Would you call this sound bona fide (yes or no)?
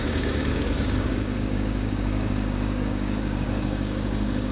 no